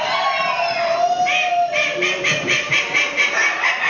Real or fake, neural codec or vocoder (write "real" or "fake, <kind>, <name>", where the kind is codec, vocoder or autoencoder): real